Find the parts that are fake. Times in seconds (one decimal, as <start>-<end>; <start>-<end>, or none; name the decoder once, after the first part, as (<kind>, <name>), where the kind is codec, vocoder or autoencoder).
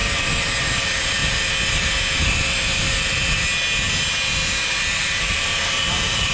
0.6-1.2 (vocoder, BigVGAN v2); 5.0-6.3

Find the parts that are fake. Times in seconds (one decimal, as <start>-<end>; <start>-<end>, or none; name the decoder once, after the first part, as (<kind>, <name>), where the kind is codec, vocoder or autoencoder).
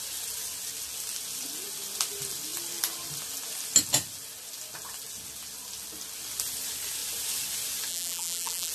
7.9-8.7 (vocoder, BigVGAN v2)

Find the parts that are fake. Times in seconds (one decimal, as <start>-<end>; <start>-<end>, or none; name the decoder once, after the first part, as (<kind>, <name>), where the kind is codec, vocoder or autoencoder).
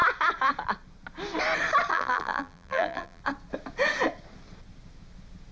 1.9-3.2 (vocoder, BigVGAN v2)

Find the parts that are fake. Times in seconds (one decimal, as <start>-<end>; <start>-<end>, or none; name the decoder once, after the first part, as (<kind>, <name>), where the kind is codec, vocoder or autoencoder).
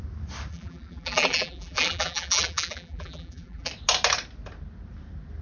0.5-3.7 (vocoder, BigVGAN v2)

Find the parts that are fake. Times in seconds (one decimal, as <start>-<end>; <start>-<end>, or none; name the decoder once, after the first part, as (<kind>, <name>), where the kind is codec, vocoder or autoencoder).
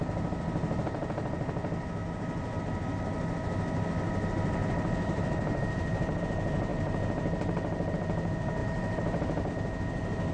4.6-6.2 (vocoder, BigVGAN v2); 8.6-9.5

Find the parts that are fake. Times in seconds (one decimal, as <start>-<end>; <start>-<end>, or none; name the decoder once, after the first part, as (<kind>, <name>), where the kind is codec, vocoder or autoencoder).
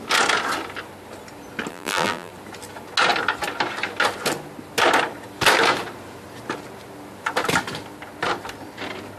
1.7-2.3 (vocoder, BigVGAN v2)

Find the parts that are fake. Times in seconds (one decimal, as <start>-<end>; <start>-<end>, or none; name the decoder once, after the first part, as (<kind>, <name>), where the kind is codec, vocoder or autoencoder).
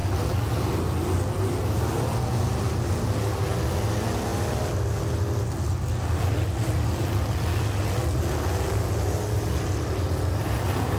none